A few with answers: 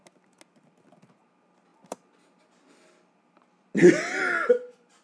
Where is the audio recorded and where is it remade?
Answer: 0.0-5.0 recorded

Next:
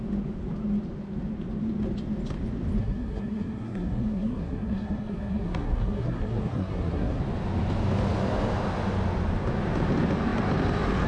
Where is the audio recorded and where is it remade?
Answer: 0.0-2.8 recorded; 2.8-7.2 remade; 7.2-11.1 recorded